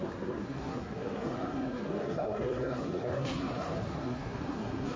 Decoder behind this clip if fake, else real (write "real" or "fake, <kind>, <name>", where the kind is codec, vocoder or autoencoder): fake, codec, SNAC